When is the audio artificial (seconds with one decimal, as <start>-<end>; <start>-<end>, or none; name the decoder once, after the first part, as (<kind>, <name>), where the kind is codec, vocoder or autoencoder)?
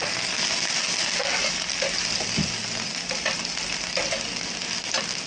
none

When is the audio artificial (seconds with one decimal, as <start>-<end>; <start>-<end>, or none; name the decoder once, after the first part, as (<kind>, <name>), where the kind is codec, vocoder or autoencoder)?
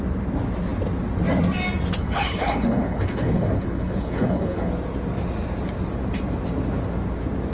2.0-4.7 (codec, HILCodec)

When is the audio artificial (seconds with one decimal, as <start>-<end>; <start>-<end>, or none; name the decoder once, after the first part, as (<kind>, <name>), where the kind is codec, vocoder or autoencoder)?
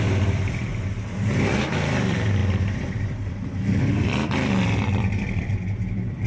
0.0-0.7 (vocoder, BigVGAN v2); 1.3-6.3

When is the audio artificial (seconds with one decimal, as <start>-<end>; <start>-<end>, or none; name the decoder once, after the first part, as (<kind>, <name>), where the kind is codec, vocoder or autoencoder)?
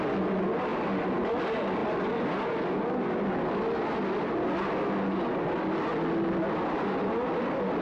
none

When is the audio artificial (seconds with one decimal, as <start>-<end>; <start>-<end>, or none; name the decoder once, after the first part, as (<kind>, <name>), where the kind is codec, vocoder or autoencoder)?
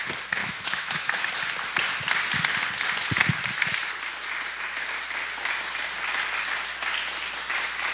0.4-1.3 (autoencoder, DAC-VAE)